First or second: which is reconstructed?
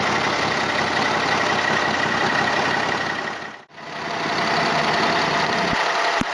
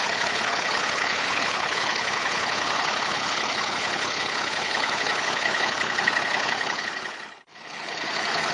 second